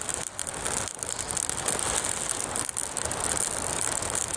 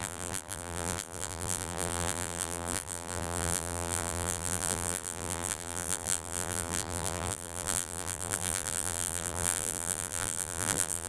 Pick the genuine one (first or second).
first